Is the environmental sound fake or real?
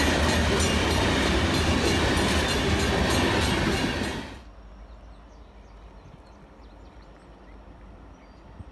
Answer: real